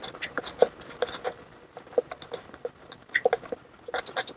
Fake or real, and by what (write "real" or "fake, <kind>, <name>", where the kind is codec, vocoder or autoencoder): real